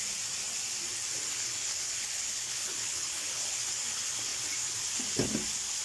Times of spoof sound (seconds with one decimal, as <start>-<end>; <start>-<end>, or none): 1.3-3.6